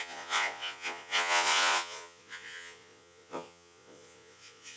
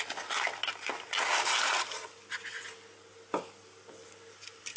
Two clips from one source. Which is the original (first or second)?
second